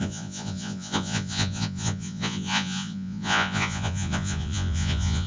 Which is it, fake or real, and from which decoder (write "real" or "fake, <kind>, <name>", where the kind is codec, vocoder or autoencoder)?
fake, vocoder, Vocos